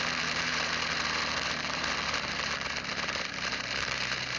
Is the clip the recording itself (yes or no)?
no